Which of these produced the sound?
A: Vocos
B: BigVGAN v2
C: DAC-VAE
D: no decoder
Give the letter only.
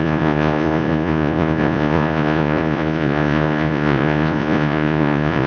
A